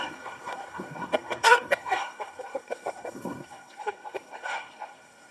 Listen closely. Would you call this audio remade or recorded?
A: remade